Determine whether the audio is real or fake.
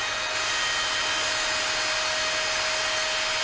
real